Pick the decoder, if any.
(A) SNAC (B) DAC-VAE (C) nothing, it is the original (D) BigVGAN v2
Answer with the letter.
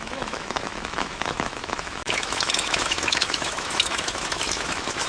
B